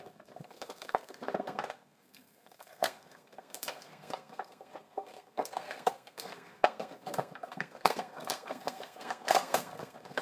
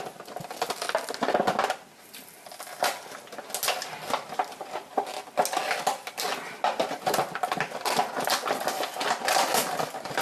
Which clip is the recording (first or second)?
second